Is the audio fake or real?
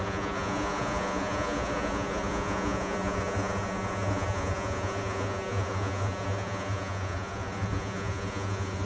fake